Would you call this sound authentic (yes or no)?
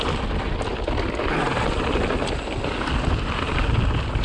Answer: yes